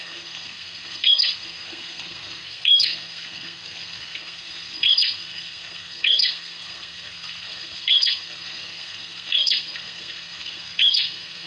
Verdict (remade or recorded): remade